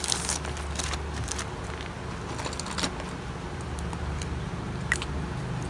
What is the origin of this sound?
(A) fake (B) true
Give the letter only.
B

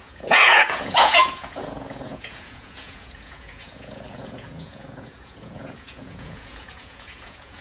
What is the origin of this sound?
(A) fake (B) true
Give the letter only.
A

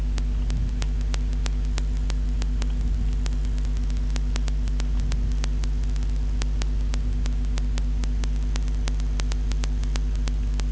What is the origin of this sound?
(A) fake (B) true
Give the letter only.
B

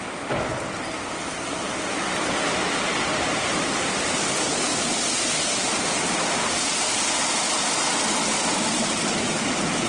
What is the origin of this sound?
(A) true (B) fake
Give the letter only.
A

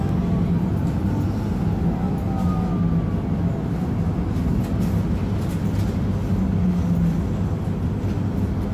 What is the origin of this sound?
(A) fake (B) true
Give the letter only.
B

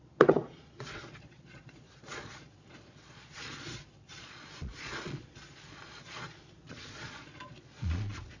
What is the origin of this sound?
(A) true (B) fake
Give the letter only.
B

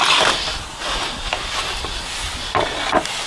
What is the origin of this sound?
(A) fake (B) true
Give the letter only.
B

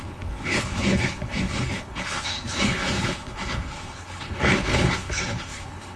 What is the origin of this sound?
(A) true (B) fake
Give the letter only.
B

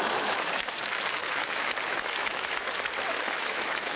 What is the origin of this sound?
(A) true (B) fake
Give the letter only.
B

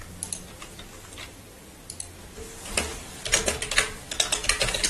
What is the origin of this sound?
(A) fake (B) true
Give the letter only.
B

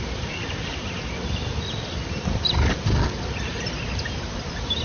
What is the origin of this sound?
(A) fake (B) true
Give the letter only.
B